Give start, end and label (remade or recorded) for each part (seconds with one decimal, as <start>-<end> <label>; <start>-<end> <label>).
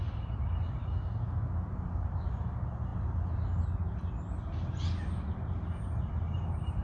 0.0-6.8 recorded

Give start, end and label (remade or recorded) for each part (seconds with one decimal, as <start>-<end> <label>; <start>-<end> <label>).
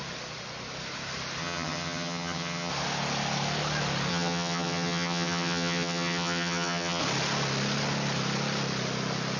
0.0-1.4 recorded; 1.4-2.7 remade; 2.7-4.1 recorded; 4.1-7.0 remade; 7.0-9.4 recorded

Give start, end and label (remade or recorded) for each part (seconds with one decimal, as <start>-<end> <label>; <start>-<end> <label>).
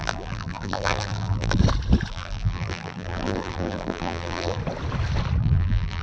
0.0-1.6 remade; 1.6-2.1 recorded; 2.1-4.6 remade; 4.6-5.4 recorded; 5.4-6.0 remade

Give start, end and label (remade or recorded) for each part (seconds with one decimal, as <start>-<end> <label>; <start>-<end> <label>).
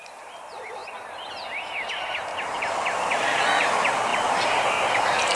0.0-0.8 remade; 0.8-2.4 recorded; 2.4-5.4 remade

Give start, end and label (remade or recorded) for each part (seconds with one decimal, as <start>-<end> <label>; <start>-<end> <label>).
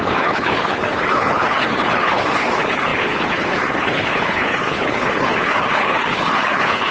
0.0-6.9 remade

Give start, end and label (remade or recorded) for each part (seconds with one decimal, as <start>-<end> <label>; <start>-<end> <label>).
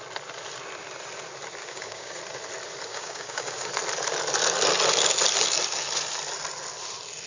0.0-1.6 recorded; 1.6-2.2 remade; 2.2-2.9 recorded; 2.9-3.7 remade; 3.7-7.3 recorded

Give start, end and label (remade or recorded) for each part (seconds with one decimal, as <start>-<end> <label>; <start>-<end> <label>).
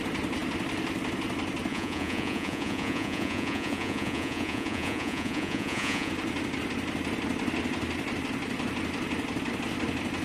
0.0-1.7 recorded; 1.7-6.1 remade; 6.1-10.2 recorded